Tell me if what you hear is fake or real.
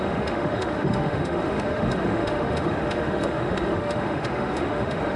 fake